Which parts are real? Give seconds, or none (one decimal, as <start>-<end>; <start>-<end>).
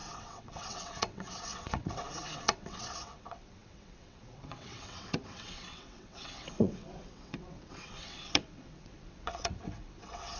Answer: none